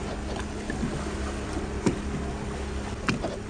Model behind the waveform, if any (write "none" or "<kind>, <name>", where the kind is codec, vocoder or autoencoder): none